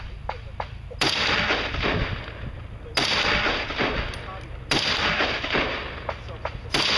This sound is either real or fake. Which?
real